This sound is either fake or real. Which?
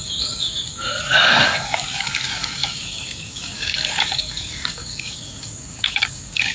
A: fake